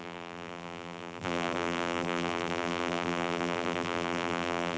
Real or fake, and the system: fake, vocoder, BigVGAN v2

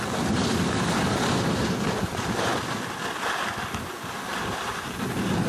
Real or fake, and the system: real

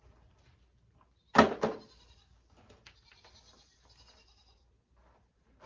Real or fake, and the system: real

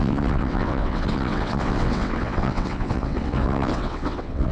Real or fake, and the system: fake, vocoder, WaveNeXt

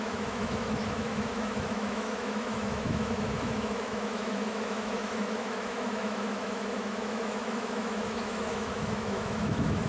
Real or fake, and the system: fake, autoencoder, DAC-VAE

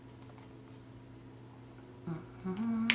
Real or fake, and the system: real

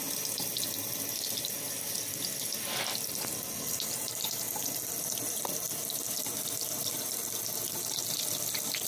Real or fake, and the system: real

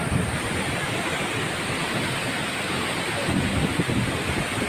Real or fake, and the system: real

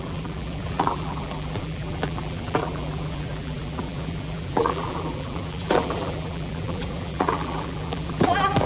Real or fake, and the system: fake, vocoder, BigVGAN v2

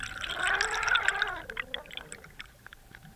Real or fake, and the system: real